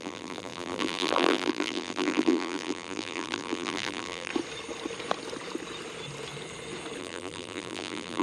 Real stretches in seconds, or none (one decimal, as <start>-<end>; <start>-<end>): 4.3-7.0